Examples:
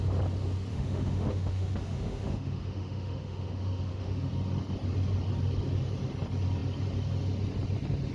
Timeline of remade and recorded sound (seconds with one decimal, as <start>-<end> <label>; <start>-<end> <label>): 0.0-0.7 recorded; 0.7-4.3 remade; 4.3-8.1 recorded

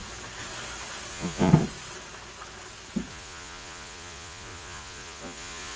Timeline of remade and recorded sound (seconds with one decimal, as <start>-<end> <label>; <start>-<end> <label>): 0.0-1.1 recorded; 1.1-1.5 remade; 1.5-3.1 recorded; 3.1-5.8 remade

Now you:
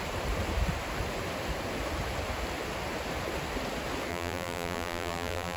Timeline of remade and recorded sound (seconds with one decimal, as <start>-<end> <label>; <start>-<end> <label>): 0.0-4.1 recorded; 4.1-5.6 remade